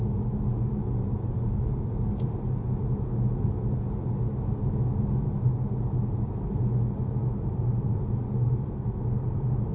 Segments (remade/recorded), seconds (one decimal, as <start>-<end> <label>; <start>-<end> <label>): 0.0-9.7 recorded